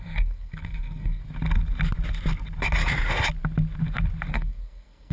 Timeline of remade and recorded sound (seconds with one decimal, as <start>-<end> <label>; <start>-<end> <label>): 0.0-1.2 remade; 1.2-4.3 recorded; 4.3-5.1 remade